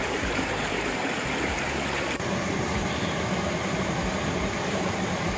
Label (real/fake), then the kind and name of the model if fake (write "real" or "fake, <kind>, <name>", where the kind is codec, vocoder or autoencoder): fake, vocoder, BigVGAN v2